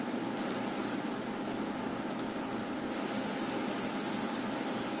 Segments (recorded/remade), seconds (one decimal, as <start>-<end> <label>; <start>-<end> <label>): 0.0-1.9 remade; 1.9-5.0 recorded

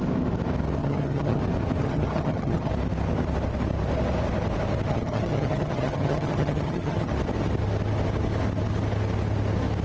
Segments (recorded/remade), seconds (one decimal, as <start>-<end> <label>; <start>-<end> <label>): 0.0-0.8 recorded; 0.8-1.4 remade; 1.4-1.8 recorded; 1.8-2.7 remade; 2.7-4.9 recorded; 4.9-7.1 remade; 7.1-9.8 recorded

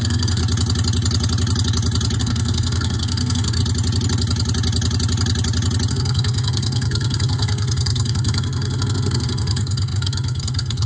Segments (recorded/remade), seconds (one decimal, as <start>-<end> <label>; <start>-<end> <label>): 0.0-0.4 remade; 0.4-2.2 recorded; 2.2-3.6 remade; 3.6-5.9 recorded; 5.9-10.9 remade